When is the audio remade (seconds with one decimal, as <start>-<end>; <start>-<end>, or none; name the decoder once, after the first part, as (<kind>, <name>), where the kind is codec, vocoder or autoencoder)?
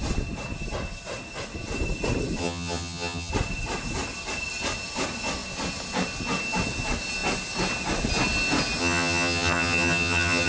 2.4-3.3 (vocoder, HiFi-GAN); 8.8-10.5